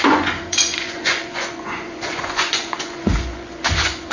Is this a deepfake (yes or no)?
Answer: yes